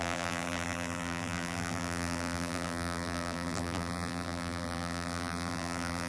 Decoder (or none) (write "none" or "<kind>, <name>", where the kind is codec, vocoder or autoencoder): vocoder, BigVGAN v2